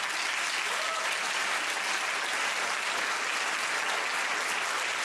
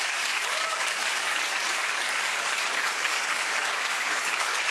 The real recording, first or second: first